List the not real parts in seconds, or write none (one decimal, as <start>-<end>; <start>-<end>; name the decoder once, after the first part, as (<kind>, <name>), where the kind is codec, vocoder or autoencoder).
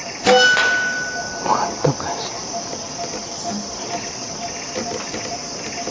none